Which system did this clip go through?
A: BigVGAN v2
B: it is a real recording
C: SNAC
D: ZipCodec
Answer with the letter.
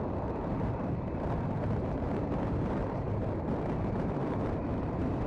A